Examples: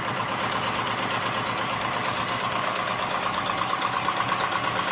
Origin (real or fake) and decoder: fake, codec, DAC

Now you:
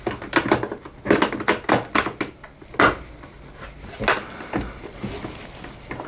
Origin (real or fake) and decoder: real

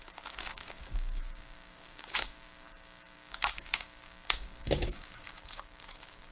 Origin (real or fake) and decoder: fake, codec, DAC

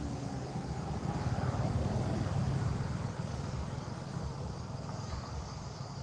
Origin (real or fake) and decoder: fake, codec, DAC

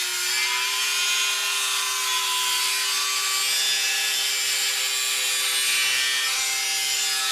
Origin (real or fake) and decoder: real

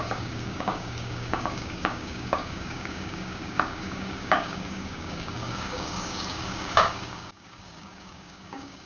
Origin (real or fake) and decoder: fake, codec, DAC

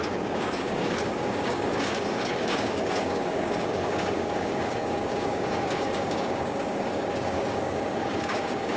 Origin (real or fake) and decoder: fake, codec, DAC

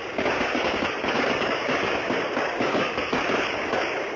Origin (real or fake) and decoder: fake, codec, DAC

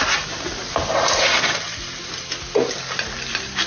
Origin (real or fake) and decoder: real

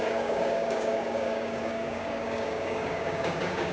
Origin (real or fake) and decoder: fake, codec, DAC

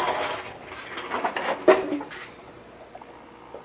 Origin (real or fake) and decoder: real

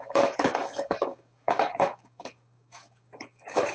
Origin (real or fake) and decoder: fake, codec, DAC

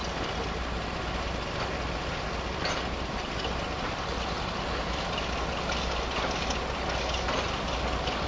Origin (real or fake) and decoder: real